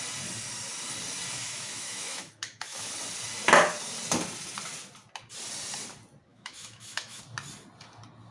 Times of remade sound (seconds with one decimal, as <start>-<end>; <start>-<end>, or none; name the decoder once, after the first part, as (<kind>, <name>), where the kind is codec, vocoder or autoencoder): 1.4-2.9 (autoencoder, DAC-VAE); 6.3-7.2